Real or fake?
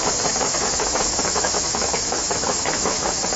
fake